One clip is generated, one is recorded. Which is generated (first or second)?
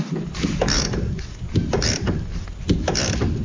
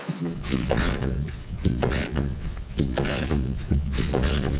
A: second